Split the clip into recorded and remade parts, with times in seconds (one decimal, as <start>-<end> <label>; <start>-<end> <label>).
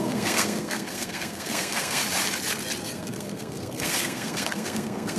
0.0-2.0 remade; 2.0-2.8 recorded; 2.8-5.2 remade